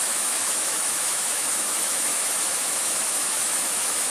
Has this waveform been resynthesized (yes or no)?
yes